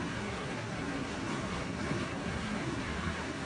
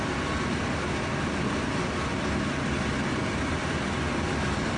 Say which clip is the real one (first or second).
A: second